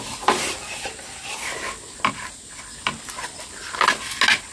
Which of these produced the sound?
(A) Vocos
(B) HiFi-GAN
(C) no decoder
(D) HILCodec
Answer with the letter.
C